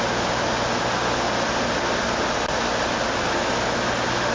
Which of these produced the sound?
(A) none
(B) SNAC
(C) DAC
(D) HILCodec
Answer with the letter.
A